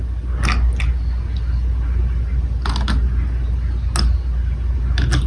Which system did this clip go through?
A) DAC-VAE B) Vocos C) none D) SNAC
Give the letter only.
C